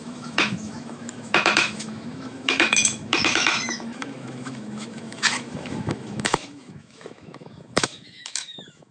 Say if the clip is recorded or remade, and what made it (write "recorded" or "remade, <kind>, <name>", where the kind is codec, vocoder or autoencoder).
remade, autoencoder, DAC-VAE